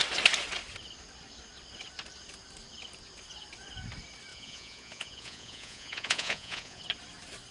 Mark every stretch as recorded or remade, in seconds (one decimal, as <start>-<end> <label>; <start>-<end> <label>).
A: 0.0-4.3 recorded; 4.3-6.8 remade; 6.8-7.5 recorded